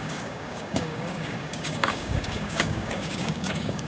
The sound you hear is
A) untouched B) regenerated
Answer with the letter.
B